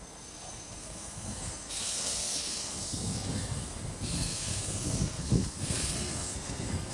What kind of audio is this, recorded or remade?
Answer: remade